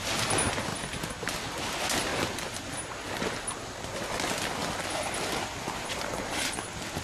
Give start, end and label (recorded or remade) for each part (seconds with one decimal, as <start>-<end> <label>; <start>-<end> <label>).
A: 0.0-7.0 recorded